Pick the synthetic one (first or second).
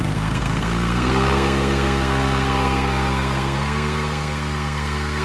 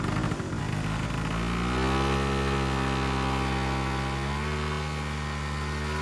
first